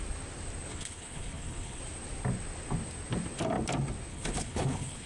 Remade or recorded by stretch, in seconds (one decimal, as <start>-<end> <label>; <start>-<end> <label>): 0.0-0.7 recorded; 0.7-1.8 remade; 1.8-4.1 recorded; 4.1-5.1 remade